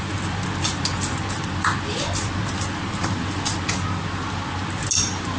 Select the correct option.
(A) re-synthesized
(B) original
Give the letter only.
B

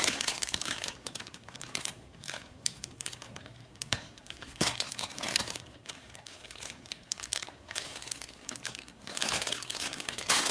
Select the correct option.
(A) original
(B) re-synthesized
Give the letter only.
B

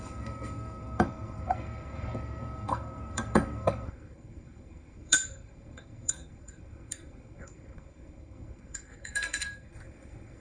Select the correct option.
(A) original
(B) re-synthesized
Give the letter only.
B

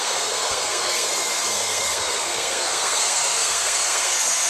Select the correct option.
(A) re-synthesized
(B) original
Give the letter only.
A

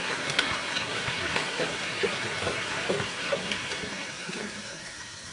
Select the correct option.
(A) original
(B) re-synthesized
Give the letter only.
B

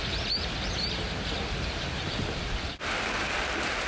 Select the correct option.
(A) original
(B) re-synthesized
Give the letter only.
A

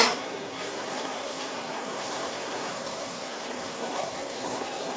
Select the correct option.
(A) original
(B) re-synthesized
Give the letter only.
B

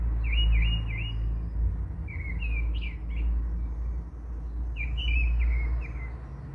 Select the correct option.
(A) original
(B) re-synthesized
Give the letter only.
A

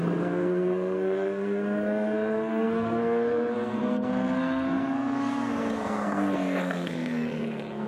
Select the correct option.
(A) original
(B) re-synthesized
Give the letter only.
B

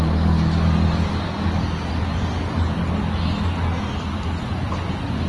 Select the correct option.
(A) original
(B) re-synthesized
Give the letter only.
A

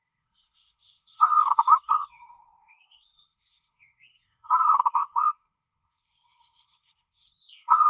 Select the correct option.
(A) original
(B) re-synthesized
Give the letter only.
B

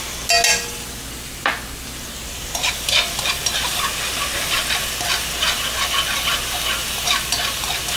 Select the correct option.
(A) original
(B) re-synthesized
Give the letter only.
A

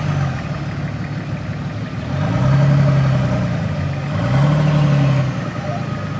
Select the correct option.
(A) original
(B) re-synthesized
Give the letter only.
A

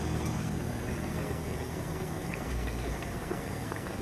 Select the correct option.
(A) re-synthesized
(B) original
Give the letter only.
A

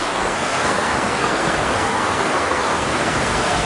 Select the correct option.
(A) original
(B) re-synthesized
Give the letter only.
B